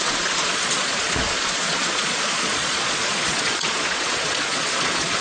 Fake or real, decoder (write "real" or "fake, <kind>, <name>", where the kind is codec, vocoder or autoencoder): fake, vocoder, Vocos